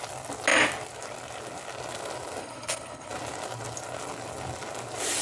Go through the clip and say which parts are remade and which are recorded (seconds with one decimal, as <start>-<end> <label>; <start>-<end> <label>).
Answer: 0.0-2.4 recorded; 2.4-3.1 remade; 3.1-5.2 recorded